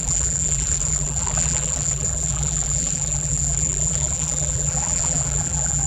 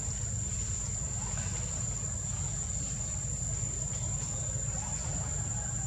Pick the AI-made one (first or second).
first